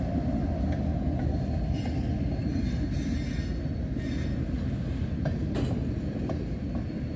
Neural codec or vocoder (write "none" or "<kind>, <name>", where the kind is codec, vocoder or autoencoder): none